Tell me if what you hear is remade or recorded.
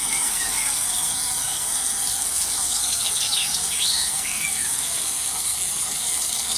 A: remade